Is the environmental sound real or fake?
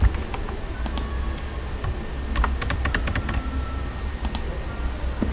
real